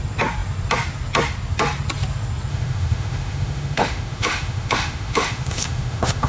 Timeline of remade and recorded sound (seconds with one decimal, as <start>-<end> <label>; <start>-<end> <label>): 0.0-2.5 recorded; 2.5-6.3 remade